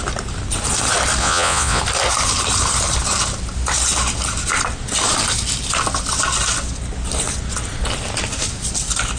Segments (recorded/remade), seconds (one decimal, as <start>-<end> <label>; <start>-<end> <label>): 0.0-1.2 recorded; 1.2-1.8 remade; 1.8-9.2 recorded